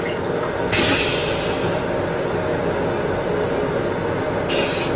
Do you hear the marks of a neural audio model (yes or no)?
no